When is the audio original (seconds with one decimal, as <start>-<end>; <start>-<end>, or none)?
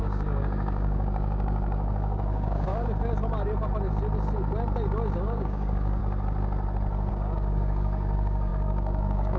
2.7-5.1; 6.0-7.1